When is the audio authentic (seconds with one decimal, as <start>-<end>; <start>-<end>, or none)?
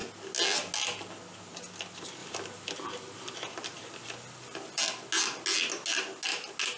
0.0-2.2; 4.8-6.8